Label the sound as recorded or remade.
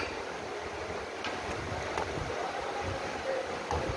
recorded